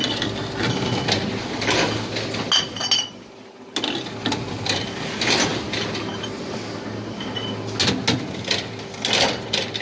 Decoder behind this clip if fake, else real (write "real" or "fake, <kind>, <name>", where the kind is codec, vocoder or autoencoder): real